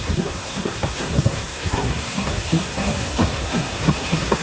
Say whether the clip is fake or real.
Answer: fake